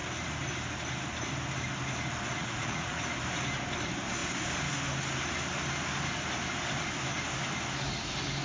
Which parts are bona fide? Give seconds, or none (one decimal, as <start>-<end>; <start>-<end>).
0.0-2.4; 3.0-8.4